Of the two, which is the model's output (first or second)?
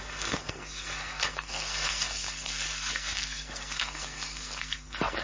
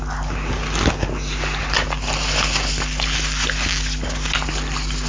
first